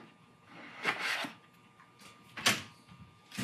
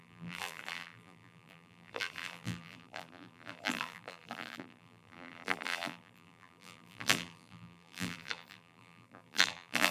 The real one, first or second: first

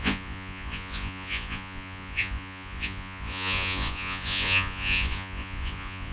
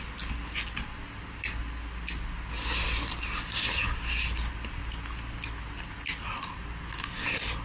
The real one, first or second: second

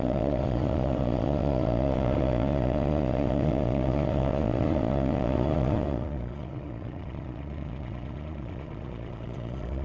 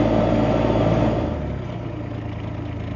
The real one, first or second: second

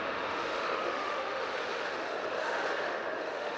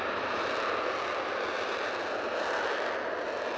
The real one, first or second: second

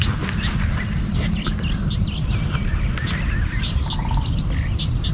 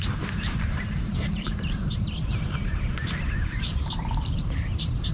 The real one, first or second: first